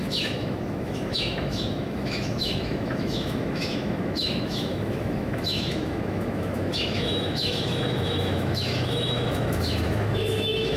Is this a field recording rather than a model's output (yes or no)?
no